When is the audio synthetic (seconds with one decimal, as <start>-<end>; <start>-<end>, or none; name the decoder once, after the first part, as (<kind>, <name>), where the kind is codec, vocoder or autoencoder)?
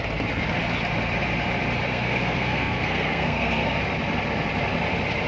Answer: 1.9-3.8 (codec, SNAC)